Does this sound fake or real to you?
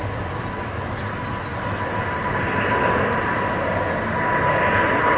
real